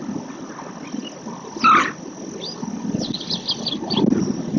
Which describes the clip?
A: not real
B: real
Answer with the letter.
B